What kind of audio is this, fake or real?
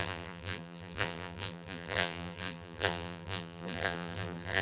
fake